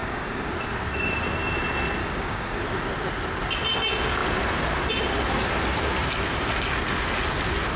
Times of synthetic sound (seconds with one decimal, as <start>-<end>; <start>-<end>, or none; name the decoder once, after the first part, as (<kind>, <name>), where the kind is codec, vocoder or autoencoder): 0.0-0.5 (codec, DAC); 2.0-2.6